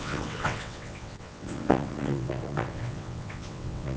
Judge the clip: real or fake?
fake